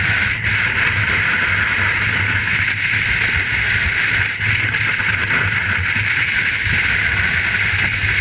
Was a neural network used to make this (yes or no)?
no